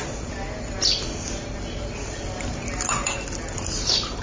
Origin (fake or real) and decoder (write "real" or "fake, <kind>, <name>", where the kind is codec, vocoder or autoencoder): real